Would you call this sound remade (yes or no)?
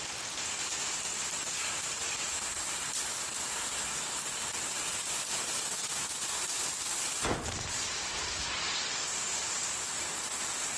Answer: no